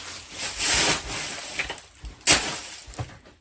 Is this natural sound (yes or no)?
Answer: yes